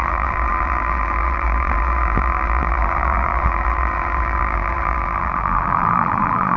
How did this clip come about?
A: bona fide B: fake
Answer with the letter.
B